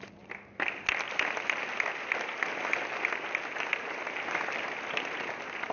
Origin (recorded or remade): recorded